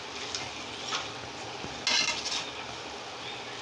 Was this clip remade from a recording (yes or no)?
no